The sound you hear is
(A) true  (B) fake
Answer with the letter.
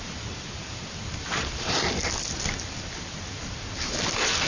B